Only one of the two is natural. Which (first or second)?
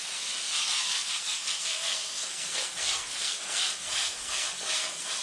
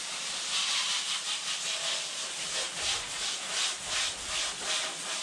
second